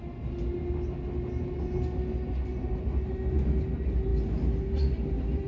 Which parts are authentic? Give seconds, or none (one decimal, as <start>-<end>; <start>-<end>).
0.0-5.5